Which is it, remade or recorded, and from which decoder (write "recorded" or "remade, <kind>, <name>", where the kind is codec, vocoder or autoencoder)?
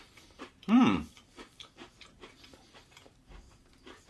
remade, vocoder, BigVGAN v2